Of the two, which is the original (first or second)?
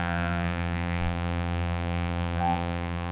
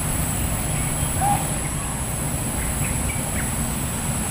second